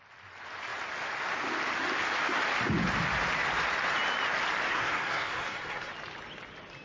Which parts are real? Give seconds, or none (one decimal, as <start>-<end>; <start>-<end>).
0.0-4.7; 5.9-6.8